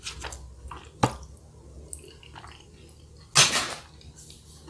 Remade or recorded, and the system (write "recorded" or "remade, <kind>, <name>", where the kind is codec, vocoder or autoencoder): recorded